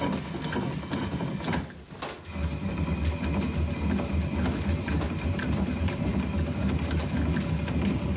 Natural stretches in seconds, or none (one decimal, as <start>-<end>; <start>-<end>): 0.0-8.2